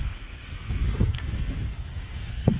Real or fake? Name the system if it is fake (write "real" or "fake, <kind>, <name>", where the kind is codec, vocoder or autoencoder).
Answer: fake, codec, SNAC